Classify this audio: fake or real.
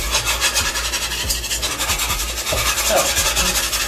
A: real